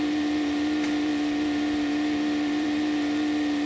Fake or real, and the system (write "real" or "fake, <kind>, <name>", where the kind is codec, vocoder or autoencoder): fake, vocoder, BigVGAN v2